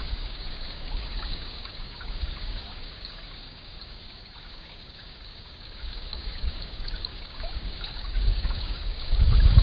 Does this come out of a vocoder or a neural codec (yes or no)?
yes